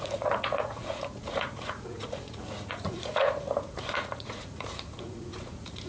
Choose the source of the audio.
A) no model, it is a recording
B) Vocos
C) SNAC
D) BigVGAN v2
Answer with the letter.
B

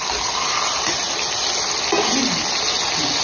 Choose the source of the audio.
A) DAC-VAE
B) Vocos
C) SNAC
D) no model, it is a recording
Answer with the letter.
D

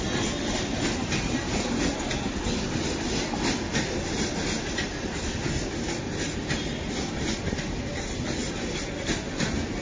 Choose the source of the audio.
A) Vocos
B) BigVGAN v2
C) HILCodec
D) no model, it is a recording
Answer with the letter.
D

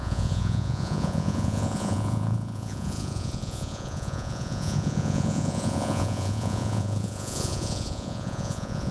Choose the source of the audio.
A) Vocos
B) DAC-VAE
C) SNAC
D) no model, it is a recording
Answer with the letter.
A